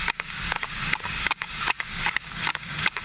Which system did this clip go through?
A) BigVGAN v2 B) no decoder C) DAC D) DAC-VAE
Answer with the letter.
C